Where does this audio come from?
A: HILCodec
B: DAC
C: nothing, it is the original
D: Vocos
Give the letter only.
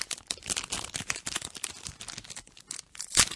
C